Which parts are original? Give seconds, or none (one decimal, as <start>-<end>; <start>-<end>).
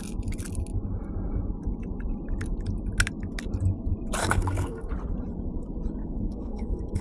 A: 0.0-4.2; 4.9-6.0